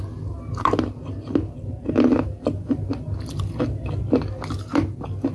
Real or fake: real